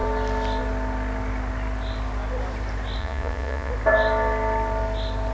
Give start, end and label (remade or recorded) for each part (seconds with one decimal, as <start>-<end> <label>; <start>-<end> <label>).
0.0-3.0 recorded; 3.0-3.7 remade; 3.7-5.3 recorded